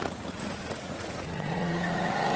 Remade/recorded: remade